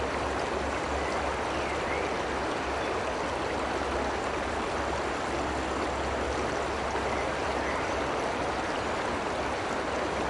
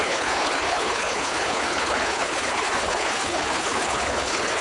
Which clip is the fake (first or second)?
second